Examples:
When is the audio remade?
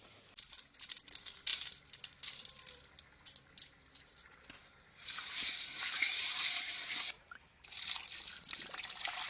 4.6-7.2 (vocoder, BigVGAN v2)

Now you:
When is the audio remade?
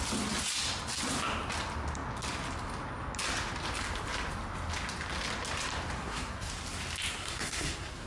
6.0-6.5 (codec, SNAC); 7.1-8.1